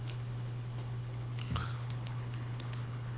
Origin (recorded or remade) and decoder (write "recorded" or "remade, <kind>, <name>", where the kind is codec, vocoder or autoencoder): remade, codec, HILCodec